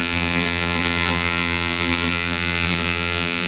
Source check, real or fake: fake